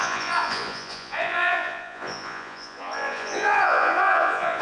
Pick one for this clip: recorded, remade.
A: remade